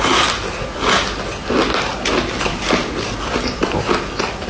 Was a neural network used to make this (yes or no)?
no